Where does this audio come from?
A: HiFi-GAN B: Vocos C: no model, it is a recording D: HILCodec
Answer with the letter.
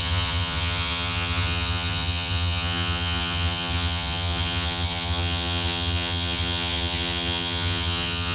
A